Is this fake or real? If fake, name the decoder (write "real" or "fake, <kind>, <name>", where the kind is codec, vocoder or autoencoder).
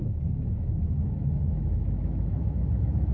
fake, autoencoder, DAC-VAE